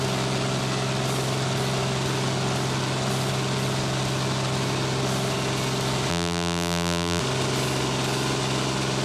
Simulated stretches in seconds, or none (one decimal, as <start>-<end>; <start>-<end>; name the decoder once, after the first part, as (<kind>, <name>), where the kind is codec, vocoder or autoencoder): 6.1-7.2 (vocoder, BigVGAN v2)